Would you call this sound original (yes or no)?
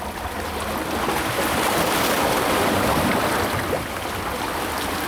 yes